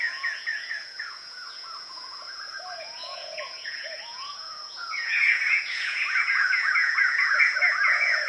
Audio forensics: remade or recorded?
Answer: remade